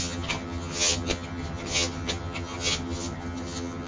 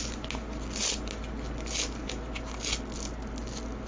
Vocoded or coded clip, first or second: first